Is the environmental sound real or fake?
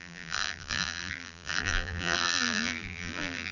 fake